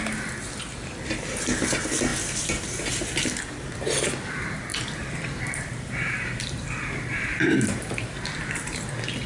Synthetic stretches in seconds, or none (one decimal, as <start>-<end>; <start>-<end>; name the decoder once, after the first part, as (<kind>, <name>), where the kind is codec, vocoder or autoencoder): 4.7-8.9 (vocoder, BigVGAN v2)